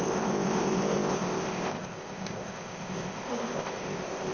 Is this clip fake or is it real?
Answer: fake